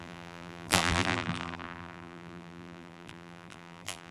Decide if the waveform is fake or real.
fake